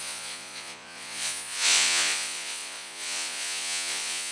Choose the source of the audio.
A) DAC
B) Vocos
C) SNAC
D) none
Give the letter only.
B